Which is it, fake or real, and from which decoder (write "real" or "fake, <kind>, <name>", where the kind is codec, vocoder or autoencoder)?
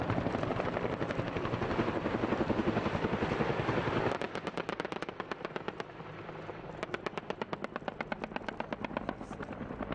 fake, vocoder, BigVGAN v2